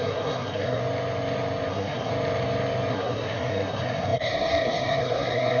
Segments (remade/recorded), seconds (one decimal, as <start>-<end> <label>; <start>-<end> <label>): 0.0-0.8 remade; 0.8-1.7 recorded; 1.7-2.1 remade; 2.1-2.9 recorded; 2.9-5.6 remade